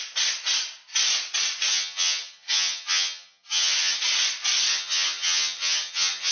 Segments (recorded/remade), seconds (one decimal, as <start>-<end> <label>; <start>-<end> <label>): 0.0-1.7 recorded; 1.7-4.0 remade; 4.0-4.7 recorded; 4.7-6.3 remade